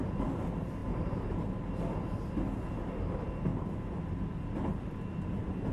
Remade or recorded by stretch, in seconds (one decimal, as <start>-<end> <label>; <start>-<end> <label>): 0.0-0.8 recorded; 0.8-1.6 remade; 1.6-5.7 recorded